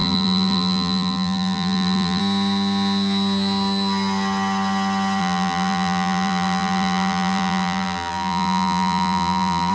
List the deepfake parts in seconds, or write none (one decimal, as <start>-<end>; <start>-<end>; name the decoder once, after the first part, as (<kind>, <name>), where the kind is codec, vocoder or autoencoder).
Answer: 0.0-2.2 (vocoder, BigVGAN v2); 5.2-9.7